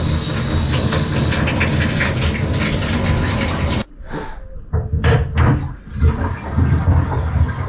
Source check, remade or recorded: recorded